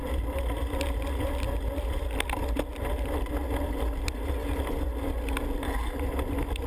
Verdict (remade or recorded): recorded